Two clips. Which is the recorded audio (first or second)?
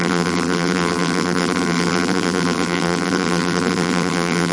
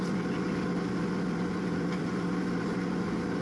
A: second